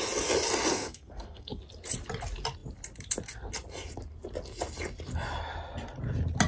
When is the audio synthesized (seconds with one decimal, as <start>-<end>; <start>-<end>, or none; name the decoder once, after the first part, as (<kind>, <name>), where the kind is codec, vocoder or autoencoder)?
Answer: 0.7-1.6 (codec, SNAC)